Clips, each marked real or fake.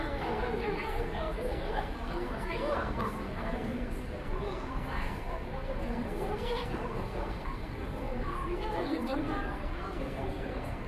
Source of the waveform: fake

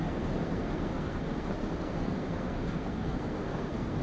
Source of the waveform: fake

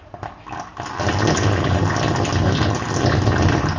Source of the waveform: real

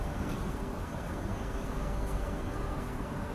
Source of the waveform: fake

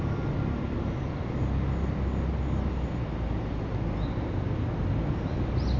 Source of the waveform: real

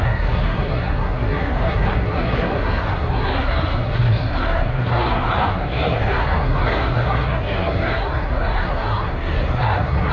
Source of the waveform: fake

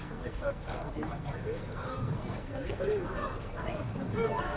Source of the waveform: fake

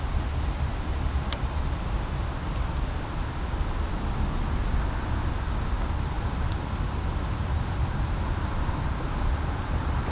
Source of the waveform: real